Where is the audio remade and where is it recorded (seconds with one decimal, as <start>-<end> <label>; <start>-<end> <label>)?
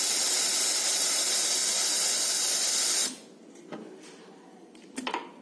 0.0-5.4 recorded